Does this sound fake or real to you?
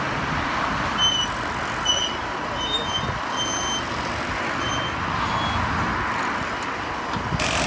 real